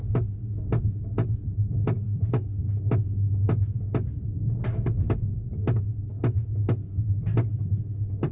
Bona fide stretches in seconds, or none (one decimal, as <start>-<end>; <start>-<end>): 0.0-8.3